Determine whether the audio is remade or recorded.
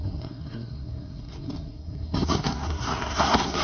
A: remade